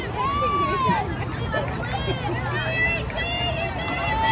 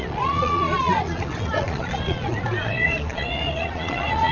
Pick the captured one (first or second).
first